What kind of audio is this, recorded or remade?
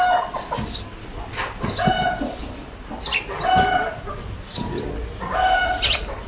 recorded